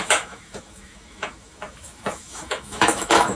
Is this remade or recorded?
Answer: remade